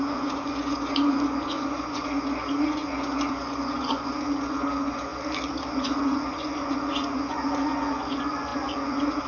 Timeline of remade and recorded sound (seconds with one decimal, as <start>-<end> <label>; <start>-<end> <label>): 0.0-5.1 remade; 5.1-5.7 recorded; 5.7-9.3 remade